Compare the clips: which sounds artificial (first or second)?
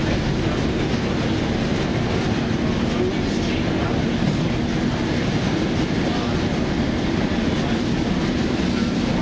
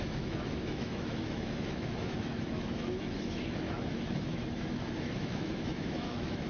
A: second